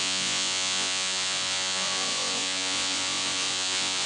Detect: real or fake fake